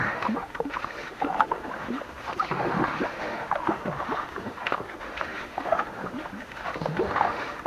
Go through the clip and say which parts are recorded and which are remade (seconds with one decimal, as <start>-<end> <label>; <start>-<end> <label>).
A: 0.0-7.7 remade